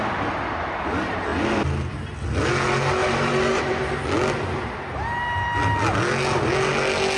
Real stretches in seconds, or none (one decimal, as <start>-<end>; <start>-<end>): 0.0-3.0; 3.8-7.2